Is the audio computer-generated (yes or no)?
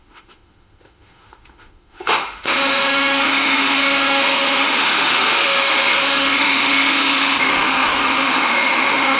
yes